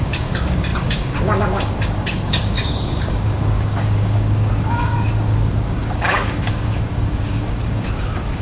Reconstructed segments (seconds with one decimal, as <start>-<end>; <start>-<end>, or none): 0.0-8.4